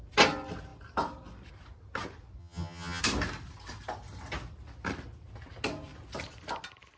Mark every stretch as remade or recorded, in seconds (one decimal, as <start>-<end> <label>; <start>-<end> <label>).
0.0-2.4 recorded; 2.4-3.0 remade; 3.0-7.0 recorded